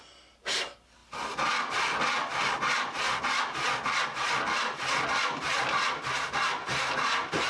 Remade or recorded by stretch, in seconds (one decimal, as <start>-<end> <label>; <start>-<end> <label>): 0.0-7.5 recorded